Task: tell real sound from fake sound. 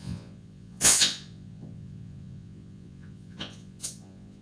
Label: fake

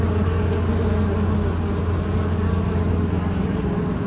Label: real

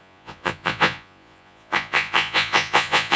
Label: fake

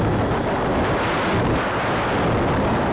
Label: real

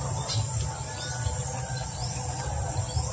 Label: real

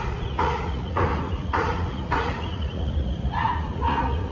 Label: fake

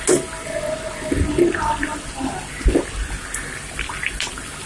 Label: real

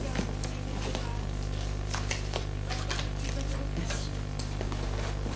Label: real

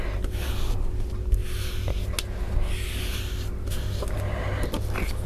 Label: real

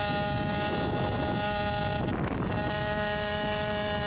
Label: real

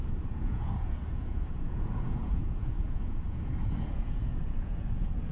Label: fake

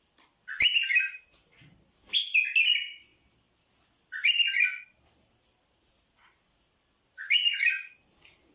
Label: real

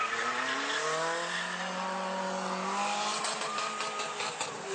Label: real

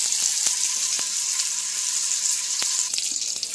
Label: real